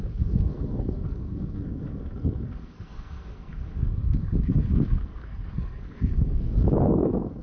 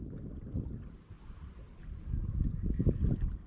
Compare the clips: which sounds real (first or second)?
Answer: second